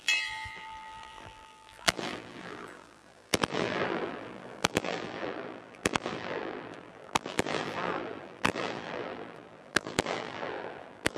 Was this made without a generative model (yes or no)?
no